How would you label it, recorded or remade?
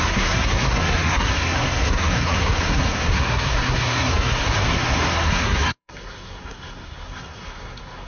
remade